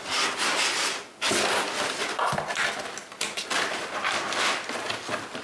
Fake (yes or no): no